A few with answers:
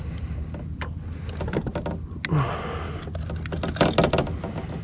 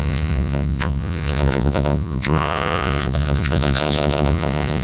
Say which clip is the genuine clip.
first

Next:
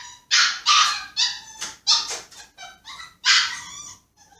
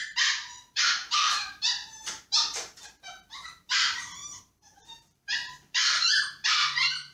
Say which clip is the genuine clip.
first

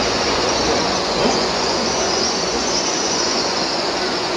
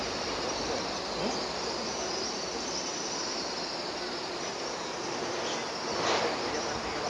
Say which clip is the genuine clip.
second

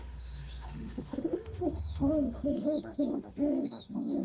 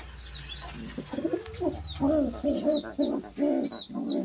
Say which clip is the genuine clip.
second